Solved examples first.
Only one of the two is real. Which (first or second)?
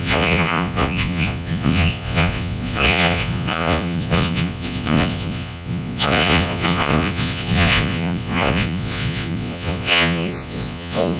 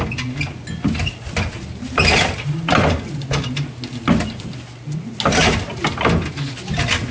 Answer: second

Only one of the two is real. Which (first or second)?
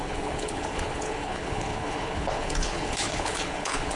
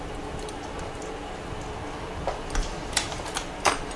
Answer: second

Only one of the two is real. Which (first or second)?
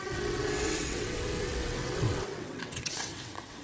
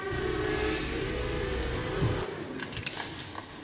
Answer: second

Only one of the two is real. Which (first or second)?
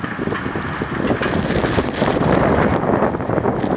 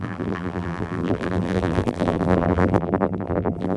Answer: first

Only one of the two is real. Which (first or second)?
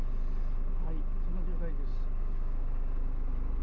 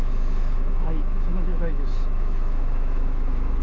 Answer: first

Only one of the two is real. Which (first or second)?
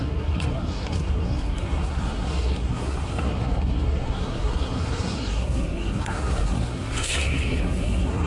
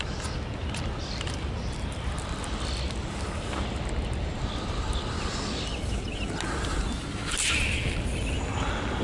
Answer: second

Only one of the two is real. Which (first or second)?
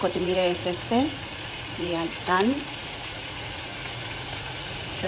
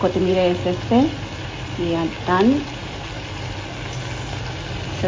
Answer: second